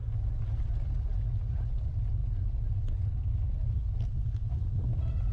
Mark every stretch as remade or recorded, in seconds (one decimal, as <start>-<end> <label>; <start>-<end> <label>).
0.0-5.3 recorded